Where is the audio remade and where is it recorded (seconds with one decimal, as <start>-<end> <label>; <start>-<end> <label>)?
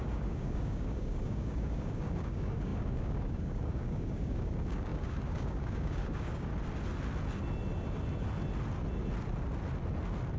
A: 0.0-6.5 remade; 6.5-10.4 recorded